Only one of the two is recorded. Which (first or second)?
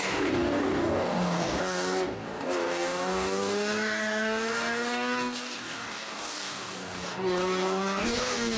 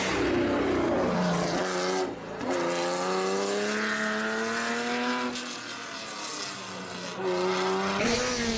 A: second